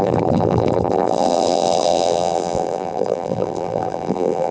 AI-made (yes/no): yes